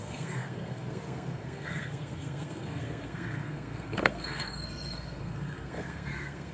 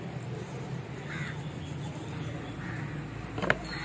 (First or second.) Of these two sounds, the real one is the second